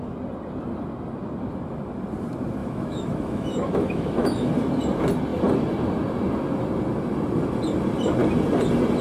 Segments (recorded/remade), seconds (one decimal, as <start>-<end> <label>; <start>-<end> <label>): 0.0-2.6 recorded; 2.6-4.5 remade; 4.5-9.0 recorded